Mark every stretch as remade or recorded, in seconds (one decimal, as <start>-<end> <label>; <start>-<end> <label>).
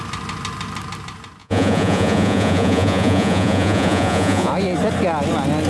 0.0-1.4 recorded; 1.4-4.5 remade; 4.5-5.7 recorded